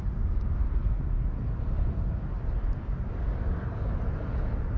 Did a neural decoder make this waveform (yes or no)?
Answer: no